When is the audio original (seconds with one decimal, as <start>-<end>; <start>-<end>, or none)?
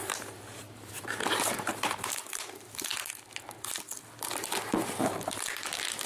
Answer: 2.9-5.4